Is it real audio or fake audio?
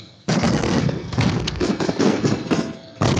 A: fake